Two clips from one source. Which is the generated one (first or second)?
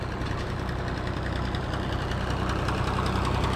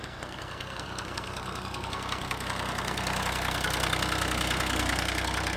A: second